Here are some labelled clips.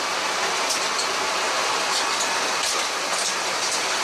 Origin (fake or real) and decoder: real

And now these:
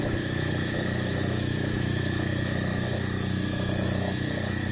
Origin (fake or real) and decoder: fake, autoencoder, DAC-VAE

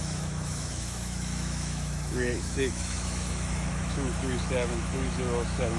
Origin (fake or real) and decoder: fake, autoencoder, DAC-VAE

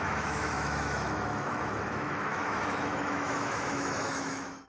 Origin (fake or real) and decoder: fake, autoencoder, DAC-VAE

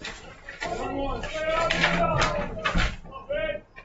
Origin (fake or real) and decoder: real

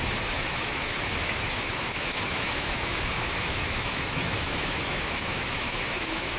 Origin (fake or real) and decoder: fake, autoencoder, DAC-VAE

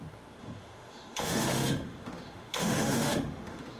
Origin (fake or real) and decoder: fake, autoencoder, DAC-VAE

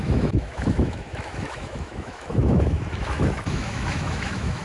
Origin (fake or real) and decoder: fake, autoencoder, DAC-VAE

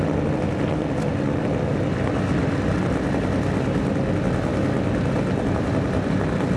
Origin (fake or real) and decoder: real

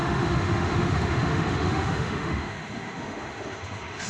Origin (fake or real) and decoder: fake, autoencoder, DAC-VAE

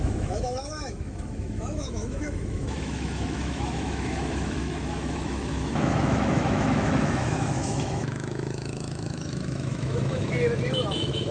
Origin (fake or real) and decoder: fake, autoencoder, DAC-VAE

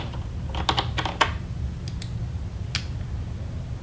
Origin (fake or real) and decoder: real